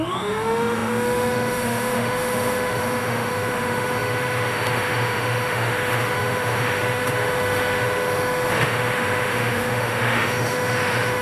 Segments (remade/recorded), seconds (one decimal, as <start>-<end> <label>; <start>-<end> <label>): 0.0-11.2 remade